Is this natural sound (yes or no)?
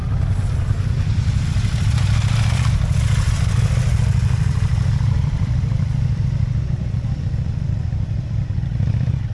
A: no